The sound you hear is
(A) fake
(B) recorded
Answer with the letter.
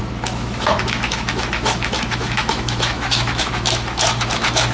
A